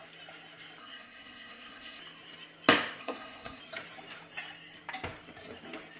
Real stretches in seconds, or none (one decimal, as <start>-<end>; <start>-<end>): 0.0-0.8; 2.0-3.0; 3.6-6.0